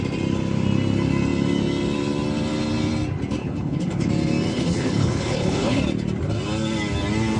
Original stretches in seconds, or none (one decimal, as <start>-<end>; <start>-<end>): 0.0-3.4; 4.1-4.5; 5.8-7.4